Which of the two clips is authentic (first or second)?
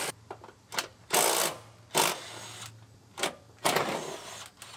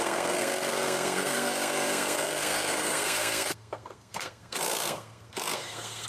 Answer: first